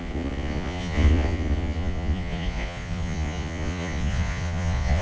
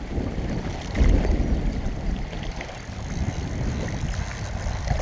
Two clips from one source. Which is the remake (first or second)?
first